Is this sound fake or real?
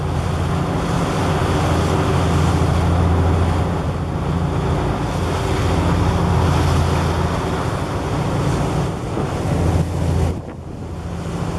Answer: real